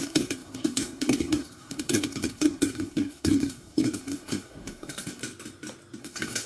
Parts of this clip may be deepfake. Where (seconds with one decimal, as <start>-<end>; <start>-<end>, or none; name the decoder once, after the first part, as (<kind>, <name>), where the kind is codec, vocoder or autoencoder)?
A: 0.0-5.2 (codec, SNAC); 6.0-6.5